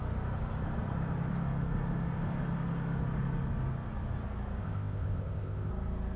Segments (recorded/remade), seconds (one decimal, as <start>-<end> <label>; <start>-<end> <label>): 0.0-4.6 recorded; 4.6-5.7 remade; 5.7-6.2 recorded